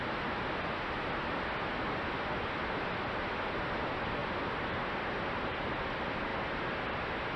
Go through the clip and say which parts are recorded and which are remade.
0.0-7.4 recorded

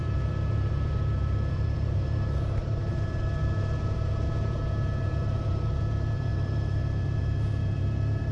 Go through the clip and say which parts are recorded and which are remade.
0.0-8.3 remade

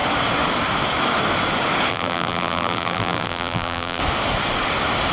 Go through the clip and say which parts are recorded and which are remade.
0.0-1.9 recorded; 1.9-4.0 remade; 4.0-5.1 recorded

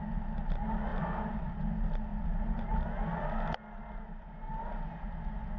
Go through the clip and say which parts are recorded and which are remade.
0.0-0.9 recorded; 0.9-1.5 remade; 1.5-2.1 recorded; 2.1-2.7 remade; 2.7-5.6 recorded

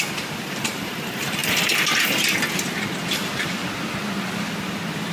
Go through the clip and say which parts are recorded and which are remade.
0.0-1.4 remade; 1.4-3.1 recorded; 3.1-3.6 remade; 3.6-5.1 recorded

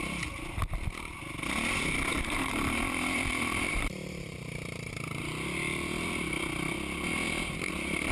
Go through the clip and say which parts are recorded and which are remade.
0.0-2.1 recorded; 2.1-4.9 remade; 4.9-8.1 recorded

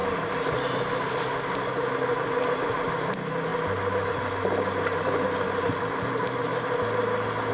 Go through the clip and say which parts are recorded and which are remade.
0.0-3.5 remade; 3.5-4.1 recorded; 4.1-6.5 remade; 6.5-7.5 recorded